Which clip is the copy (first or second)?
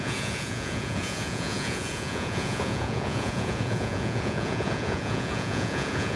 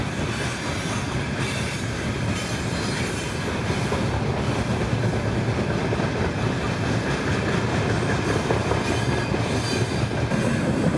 first